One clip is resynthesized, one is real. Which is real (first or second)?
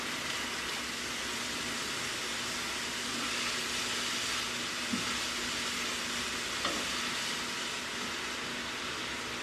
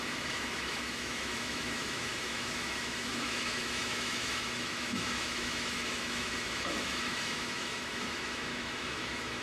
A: first